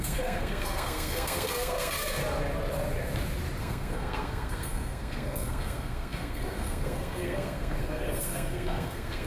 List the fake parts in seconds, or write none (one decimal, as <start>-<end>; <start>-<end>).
0.0-2.2; 3.6-9.3